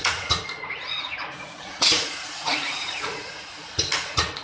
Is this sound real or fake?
fake